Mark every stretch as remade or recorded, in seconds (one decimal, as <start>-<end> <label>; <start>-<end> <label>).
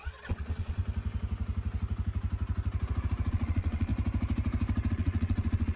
0.0-0.8 remade; 0.8-3.3 recorded; 3.3-3.9 remade; 3.9-4.9 recorded; 4.9-5.8 remade